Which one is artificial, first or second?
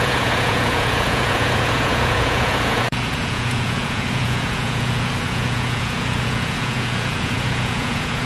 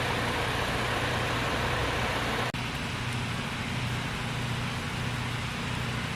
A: first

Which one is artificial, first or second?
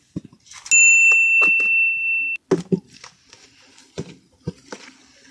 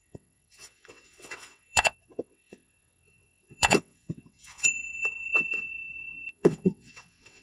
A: second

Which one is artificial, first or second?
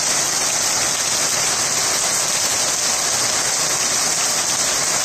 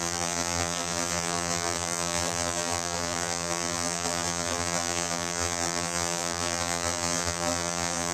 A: second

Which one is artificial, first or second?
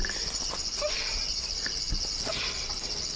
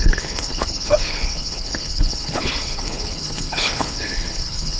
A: second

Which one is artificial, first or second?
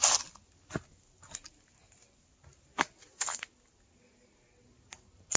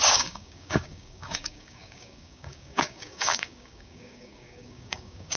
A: second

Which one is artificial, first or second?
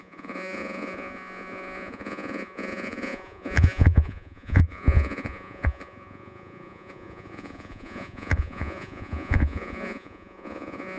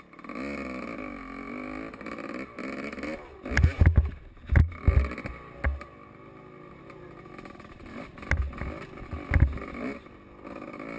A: first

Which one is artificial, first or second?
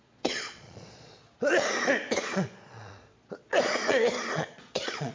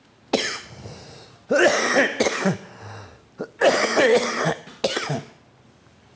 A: first